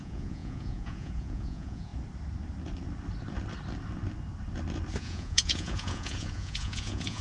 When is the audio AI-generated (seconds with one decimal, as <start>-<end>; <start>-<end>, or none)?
0.0-1.9; 5.0-7.2